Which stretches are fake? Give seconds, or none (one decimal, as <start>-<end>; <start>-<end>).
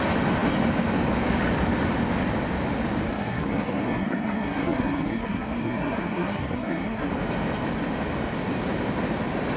3.1-7.1